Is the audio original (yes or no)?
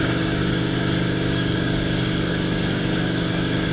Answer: no